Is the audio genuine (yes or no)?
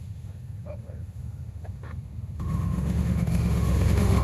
no